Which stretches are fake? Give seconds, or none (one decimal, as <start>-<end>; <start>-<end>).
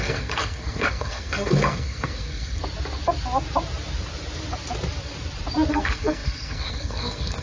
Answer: 0.0-2.6; 5.7-7.4